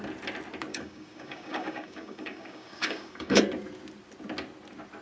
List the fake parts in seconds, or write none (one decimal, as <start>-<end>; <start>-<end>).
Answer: 0.7-3.4